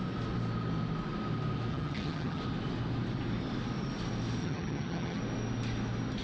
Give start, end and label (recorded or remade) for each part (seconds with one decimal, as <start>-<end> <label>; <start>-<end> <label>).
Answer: 0.0-1.7 recorded; 1.7-2.4 remade; 2.4-4.4 recorded; 4.4-5.2 remade; 5.2-6.2 recorded